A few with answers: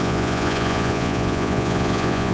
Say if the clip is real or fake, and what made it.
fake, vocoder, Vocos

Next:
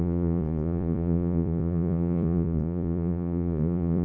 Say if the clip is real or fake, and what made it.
fake, vocoder, Vocos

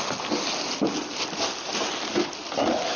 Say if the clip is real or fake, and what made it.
real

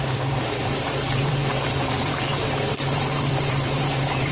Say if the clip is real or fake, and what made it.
fake, vocoder, BigVGAN v2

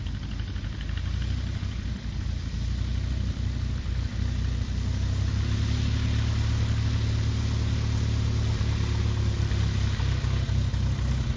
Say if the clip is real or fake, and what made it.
real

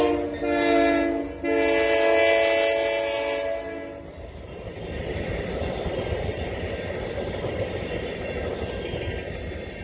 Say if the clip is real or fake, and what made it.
real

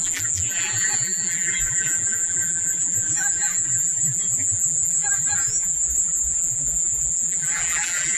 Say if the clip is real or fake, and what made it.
fake, vocoder, BigVGAN v2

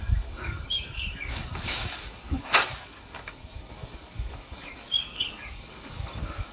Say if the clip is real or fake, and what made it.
fake, codec, DAC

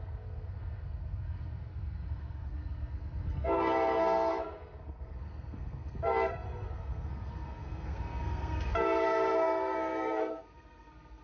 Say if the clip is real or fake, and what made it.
fake, codec, SNAC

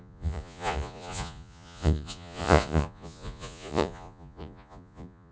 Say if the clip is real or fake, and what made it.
fake, vocoder, Vocos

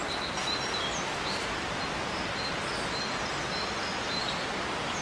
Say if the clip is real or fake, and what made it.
real